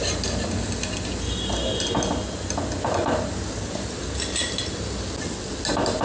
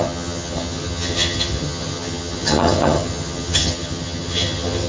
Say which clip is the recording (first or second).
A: first